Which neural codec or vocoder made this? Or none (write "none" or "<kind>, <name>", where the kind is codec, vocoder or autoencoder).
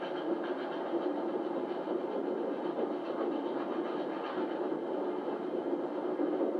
vocoder, BigVGAN v2